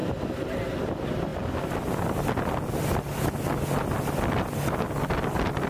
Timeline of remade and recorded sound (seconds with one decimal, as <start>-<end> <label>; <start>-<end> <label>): 0.0-5.7 recorded